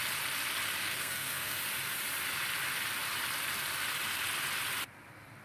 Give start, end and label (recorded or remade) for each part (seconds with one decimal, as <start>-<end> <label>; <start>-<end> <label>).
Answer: 0.0-0.8 recorded; 0.8-1.6 remade; 1.6-5.4 recorded